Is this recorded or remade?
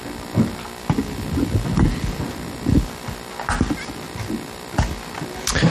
recorded